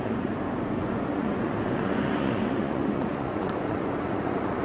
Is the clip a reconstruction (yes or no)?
yes